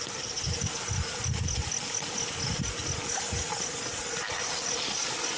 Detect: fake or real real